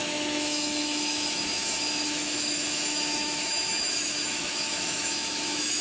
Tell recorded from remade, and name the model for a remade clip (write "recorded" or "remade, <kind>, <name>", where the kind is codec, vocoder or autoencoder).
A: remade, autoencoder, DAC-VAE